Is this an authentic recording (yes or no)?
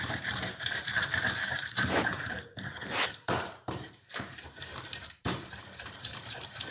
no